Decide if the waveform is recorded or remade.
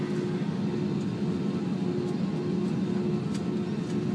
recorded